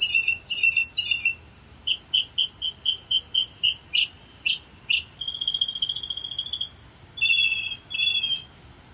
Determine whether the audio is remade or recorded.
recorded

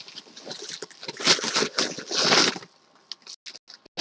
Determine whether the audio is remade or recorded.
recorded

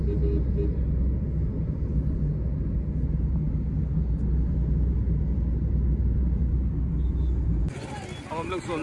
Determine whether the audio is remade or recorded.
recorded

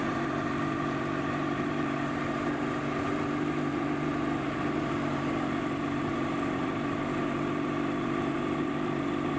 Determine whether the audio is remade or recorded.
remade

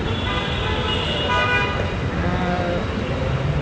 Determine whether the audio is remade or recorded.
recorded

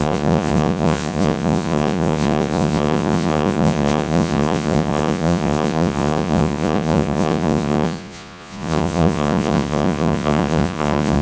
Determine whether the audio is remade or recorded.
remade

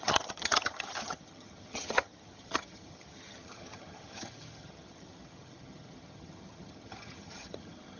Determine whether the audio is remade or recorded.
remade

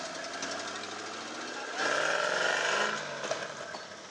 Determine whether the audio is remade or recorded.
recorded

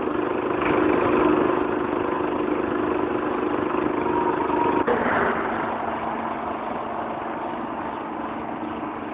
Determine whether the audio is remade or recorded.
recorded